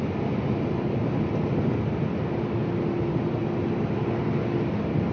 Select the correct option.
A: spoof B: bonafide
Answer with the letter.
B